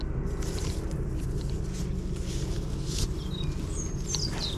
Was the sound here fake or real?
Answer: real